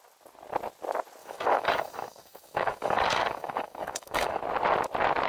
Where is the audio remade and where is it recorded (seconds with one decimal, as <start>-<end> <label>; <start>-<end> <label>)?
0.0-1.2 recorded; 1.2-4.4 remade; 4.4-5.3 recorded